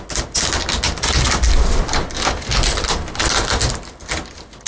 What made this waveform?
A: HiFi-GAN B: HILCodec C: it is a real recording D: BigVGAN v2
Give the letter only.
C